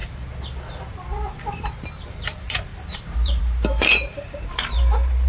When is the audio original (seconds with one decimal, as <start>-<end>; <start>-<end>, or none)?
0.0-2.0

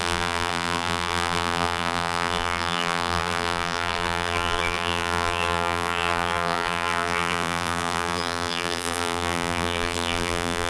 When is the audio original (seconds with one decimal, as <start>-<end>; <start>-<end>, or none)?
none